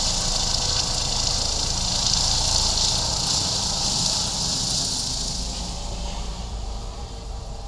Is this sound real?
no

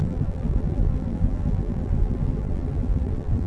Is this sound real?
no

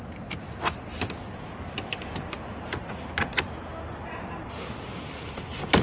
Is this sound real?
yes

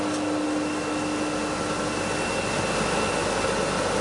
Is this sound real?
yes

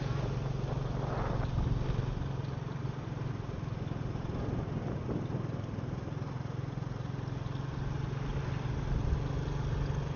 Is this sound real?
yes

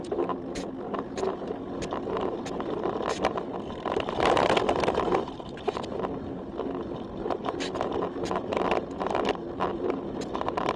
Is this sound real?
yes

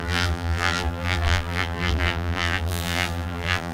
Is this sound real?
no